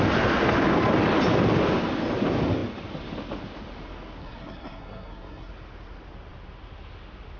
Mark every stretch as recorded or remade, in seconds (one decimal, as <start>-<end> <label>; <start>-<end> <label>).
0.0-4.2 recorded; 4.2-5.5 remade; 5.5-7.4 recorded